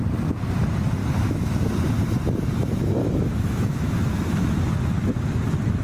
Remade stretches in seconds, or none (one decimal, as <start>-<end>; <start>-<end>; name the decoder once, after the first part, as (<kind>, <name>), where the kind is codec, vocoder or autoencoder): 1.0-1.7 (autoencoder, DAC-VAE); 3.0-4.7